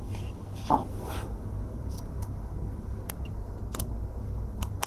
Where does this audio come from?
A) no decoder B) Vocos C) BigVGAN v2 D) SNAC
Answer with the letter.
D